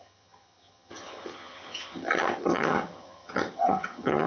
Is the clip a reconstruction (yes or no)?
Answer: yes